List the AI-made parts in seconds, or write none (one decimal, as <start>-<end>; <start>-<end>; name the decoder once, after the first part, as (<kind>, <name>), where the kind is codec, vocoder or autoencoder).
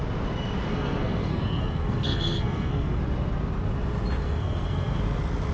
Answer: 0.7-3.0 (codec, SNAC); 4.2-5.0